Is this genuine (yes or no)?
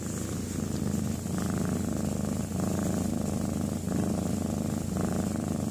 yes